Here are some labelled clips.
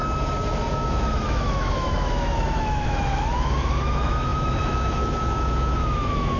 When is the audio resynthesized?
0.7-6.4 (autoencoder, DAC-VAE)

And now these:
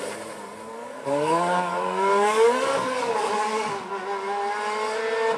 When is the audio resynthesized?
0.7-3.9 (codec, DAC)